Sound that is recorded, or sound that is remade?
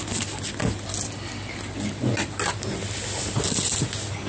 recorded